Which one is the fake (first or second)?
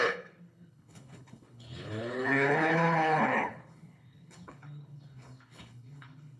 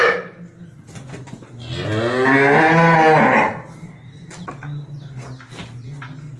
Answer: first